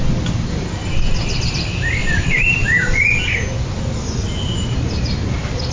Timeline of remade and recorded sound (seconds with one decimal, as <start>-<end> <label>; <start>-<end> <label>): 0.0-2.0 recorded; 2.0-3.0 remade; 3.0-5.7 recorded

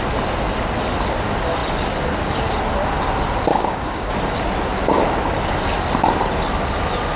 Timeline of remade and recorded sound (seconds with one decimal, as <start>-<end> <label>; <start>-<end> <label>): 0.0-3.5 recorded; 3.5-4.1 remade; 4.1-7.2 recorded

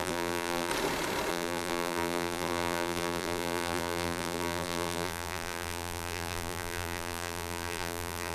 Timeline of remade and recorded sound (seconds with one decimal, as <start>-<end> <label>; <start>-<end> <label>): 0.0-0.7 remade; 0.7-1.3 recorded; 1.3-8.3 remade

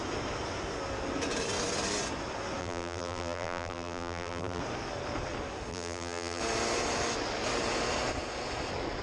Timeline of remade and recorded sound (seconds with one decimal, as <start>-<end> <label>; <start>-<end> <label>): 0.0-2.6 recorded; 2.6-4.6 remade; 4.6-5.7 recorded; 5.7-6.4 remade; 6.4-9.0 recorded

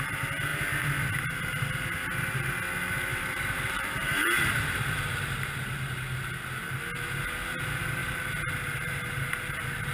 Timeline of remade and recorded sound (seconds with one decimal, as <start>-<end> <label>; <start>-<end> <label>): 0.0-3.1 recorded; 3.1-5.5 remade; 5.5-8.0 recorded; 8.0-9.9 remade

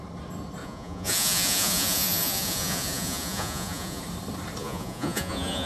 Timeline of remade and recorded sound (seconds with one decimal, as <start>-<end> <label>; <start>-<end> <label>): 0.0-0.6 recorded; 0.6-4.0 remade; 4.0-4.6 recorded; 4.6-5.7 remade